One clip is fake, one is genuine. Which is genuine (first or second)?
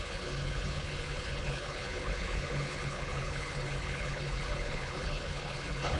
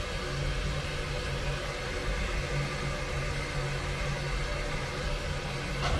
second